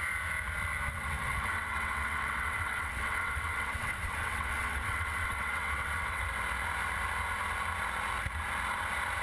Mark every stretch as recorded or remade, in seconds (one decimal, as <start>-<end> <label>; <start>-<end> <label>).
0.0-0.9 recorded; 0.9-6.2 remade; 6.2-9.2 recorded